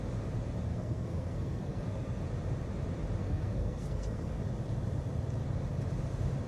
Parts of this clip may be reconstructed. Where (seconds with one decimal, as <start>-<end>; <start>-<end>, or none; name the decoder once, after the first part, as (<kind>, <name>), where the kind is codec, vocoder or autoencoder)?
0.7-2.2 (codec, SNAC); 3.2-4.4